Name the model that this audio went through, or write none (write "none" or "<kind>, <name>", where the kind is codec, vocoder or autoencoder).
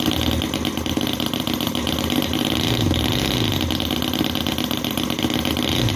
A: none